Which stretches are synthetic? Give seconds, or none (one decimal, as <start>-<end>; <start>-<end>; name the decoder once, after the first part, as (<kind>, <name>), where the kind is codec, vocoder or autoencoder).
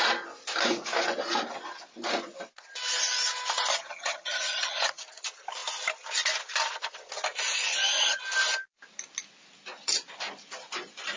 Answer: 3.7-5.0 (vocoder, HiFi-GAN); 7.7-8.2